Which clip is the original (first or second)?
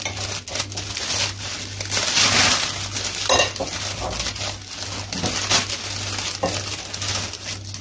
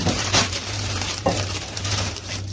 first